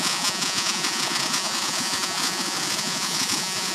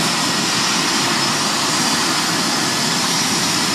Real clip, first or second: second